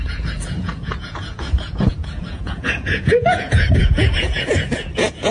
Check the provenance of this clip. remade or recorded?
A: remade